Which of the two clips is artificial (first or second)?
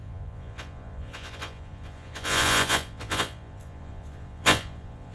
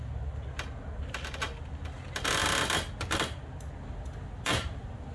first